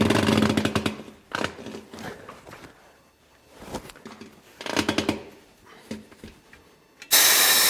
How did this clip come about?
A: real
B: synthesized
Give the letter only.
A